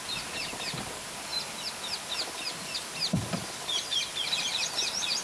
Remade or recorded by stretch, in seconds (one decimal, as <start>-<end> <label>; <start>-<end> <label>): 0.0-5.2 recorded